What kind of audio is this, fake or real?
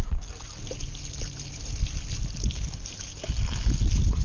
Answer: real